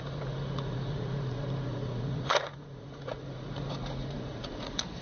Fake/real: fake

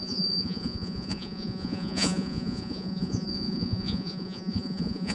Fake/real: fake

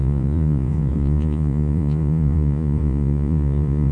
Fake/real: fake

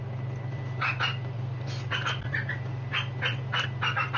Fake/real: real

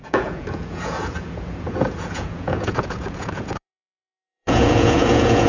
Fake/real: fake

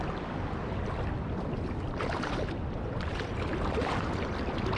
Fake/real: real